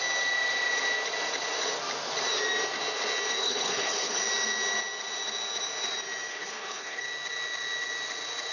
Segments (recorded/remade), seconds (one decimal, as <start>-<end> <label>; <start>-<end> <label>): 0.0-3.4 recorded; 3.4-4.2 remade; 4.2-6.3 recorded; 6.3-7.0 remade; 7.0-8.5 recorded